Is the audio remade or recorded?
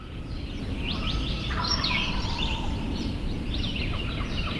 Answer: recorded